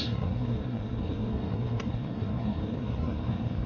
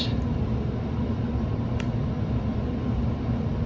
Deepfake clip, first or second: first